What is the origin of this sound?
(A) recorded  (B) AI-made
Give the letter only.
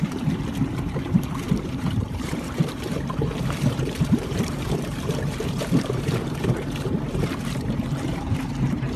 B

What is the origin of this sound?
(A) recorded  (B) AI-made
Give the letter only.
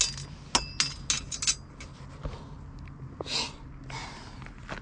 A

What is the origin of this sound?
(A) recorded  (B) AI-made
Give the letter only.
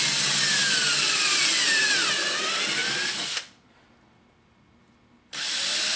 A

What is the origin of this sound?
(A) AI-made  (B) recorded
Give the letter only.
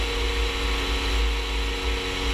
B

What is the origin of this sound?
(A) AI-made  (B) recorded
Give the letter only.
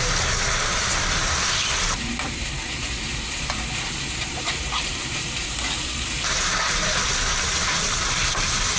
A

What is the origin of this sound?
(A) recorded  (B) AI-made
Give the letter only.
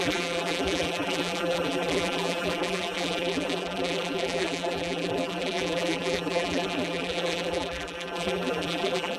B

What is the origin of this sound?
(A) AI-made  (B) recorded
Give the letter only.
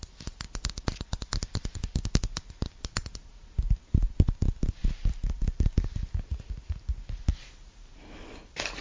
B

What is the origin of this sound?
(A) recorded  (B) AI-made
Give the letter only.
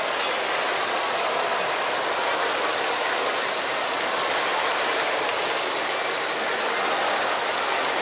A